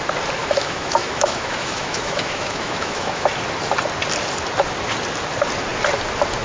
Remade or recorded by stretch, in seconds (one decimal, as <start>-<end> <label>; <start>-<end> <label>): 0.0-0.4 recorded; 0.4-3.3 remade; 3.3-6.4 recorded